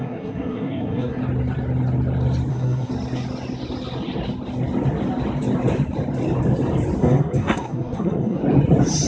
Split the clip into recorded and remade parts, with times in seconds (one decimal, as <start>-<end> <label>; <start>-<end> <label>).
0.0-1.2 remade; 1.2-2.5 recorded; 2.5-2.9 remade; 2.9-7.0 recorded; 7.0-8.4 remade; 8.4-9.1 recorded